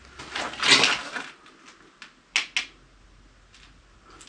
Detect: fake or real real